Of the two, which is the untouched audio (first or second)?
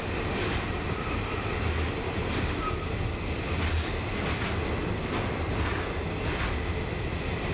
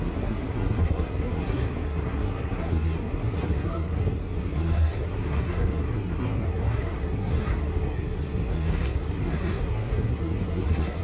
first